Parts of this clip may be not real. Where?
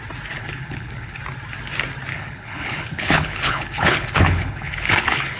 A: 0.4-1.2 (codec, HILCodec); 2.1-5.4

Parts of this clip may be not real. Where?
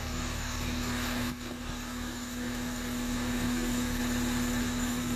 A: 0.0-4.0 (codec, DAC); 4.6-5.2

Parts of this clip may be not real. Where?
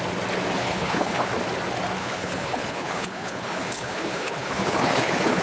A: 0.6-1.3 (codec, HILCodec); 2.0-5.4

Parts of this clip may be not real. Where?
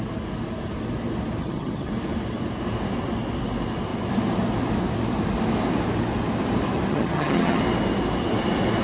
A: 1.4-1.9 (vocoder, HiFi-GAN); 6.9-7.6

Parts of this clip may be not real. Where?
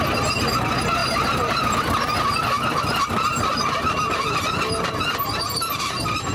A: 1.0-3.9 (vocoder, BigVGAN v2)